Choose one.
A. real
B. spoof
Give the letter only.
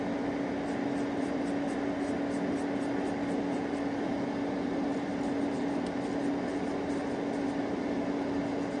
A